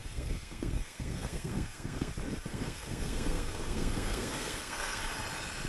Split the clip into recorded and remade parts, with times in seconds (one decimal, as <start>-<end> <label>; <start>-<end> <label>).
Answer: 0.0-2.1 remade; 2.1-2.5 recorded; 2.5-5.0 remade; 5.0-5.7 recorded